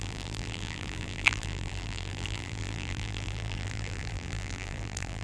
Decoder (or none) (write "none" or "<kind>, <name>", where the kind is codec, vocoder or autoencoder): vocoder, BigVGAN v2